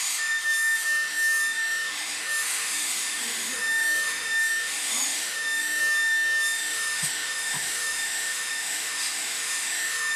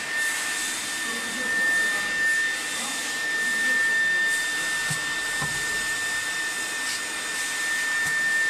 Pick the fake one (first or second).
first